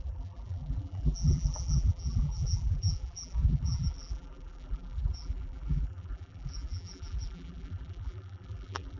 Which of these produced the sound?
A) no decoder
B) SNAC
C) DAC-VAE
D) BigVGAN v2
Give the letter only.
D